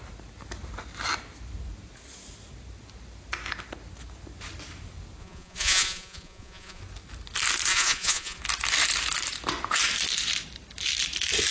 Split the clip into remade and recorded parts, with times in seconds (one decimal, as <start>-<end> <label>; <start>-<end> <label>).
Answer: 0.0-5.2 recorded; 5.2-6.8 remade; 6.8-7.7 recorded; 7.7-8.4 remade; 8.4-11.5 recorded